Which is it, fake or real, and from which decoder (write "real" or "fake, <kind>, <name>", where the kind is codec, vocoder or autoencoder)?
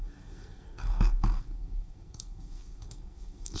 fake, codec, SNAC